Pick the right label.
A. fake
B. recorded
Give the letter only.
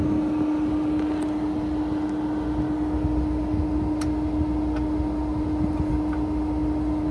B